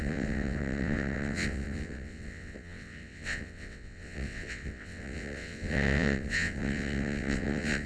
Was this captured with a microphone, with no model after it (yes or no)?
no